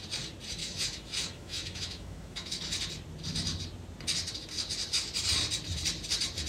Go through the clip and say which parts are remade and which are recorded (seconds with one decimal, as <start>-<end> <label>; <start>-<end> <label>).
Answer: 0.0-0.6 recorded; 0.6-2.6 remade; 2.6-6.5 recorded

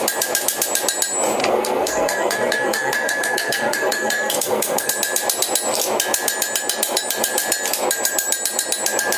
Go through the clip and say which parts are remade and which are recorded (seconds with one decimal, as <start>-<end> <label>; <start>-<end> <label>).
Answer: 0.0-1.4 recorded; 1.4-4.9 remade; 4.9-9.2 recorded

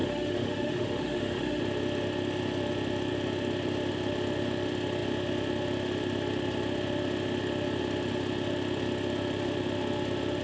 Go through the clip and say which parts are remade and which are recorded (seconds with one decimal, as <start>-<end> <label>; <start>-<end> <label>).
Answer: 0.0-1.6 remade; 1.6-10.4 recorded

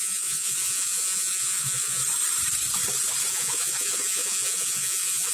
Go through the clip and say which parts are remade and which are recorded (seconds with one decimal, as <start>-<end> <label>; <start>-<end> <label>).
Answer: 0.0-2.0 remade; 2.0-3.3 recorded; 3.3-5.3 remade

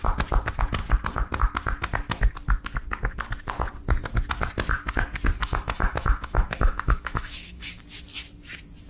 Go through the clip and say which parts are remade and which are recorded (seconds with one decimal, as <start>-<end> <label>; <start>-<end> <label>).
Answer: 0.0-5.4 recorded; 5.4-7.7 remade; 7.7-8.9 recorded